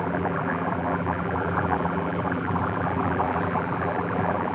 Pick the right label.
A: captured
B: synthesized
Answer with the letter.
B